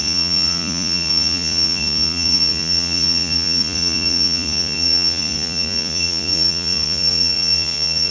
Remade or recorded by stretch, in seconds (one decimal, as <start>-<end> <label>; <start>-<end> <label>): 0.0-8.1 remade